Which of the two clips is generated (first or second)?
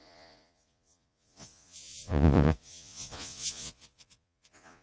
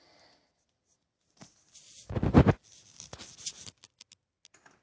first